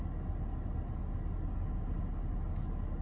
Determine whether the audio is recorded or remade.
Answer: recorded